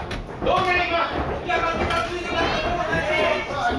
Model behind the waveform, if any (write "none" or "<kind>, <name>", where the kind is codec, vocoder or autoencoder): none